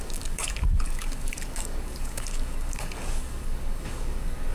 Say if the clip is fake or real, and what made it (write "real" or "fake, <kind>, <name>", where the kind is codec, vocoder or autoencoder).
fake, codec, DAC